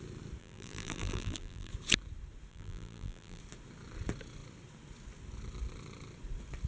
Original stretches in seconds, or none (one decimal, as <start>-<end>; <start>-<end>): 0.0-0.4; 1.7-2.5; 3.4-6.7